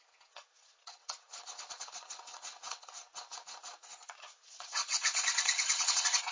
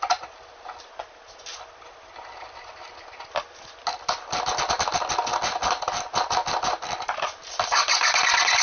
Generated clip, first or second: first